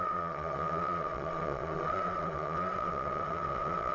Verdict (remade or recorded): remade